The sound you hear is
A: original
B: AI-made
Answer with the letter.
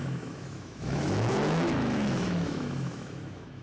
B